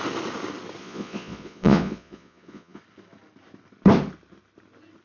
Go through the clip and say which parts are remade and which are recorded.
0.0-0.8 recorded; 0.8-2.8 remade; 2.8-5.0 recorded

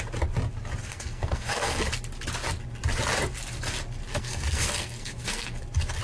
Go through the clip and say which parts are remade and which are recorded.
0.0-0.8 recorded; 0.8-1.8 remade; 1.8-4.1 recorded; 4.1-5.6 remade; 5.6-6.0 recorded

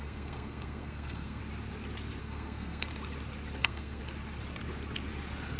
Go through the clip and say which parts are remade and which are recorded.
0.0-1.4 remade; 1.4-2.2 recorded; 2.2-2.9 remade; 2.9-3.6 recorded; 3.6-4.0 remade; 4.0-5.6 recorded

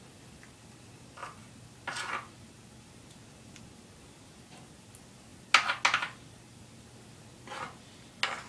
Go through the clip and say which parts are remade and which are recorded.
0.0-8.5 recorded

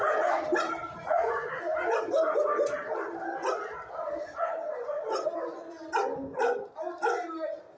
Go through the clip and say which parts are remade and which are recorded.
0.0-0.8 recorded; 0.8-1.5 remade; 1.5-7.8 recorded